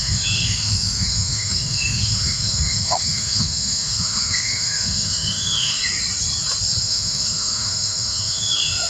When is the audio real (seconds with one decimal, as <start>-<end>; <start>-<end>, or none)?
5.8-6.8